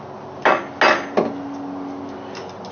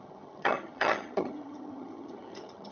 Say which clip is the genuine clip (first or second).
first